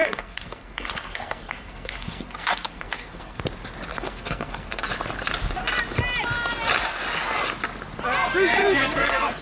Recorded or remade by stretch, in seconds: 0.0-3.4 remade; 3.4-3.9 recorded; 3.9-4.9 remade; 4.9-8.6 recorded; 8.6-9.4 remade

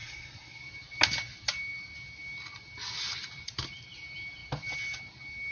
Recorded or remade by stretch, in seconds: 0.0-0.6 remade; 0.6-5.5 recorded

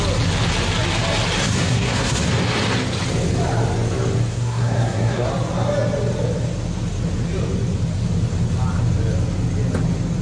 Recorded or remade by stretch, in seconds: 0.0-1.4 recorded; 1.4-2.2 remade; 2.2-4.3 recorded; 4.3-5.3 remade; 5.3-10.2 recorded

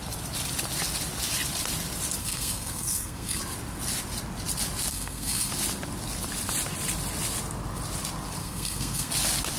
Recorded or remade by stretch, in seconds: 0.0-2.2 recorded; 2.2-3.4 remade; 3.4-4.9 recorded; 4.9-5.5 remade; 5.5-8.4 recorded; 8.4-9.1 remade; 9.1-9.6 recorded

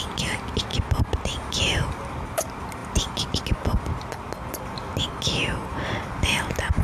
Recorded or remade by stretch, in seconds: 0.0-6.8 recorded

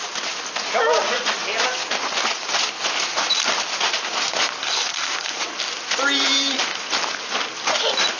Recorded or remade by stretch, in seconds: 0.0-4.6 recorded; 4.6-5.4 remade; 5.4-8.2 recorded

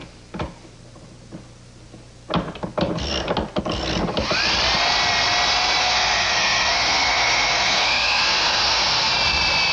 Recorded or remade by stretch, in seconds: 0.0-5.8 recorded; 5.8-9.1 remade; 9.1-9.7 recorded